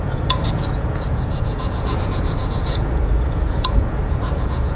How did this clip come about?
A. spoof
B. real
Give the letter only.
A